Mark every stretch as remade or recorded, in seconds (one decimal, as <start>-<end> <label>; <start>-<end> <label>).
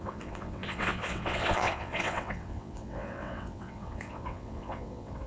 0.0-5.3 remade